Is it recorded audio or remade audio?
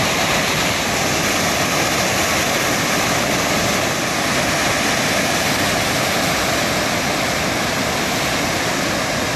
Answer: recorded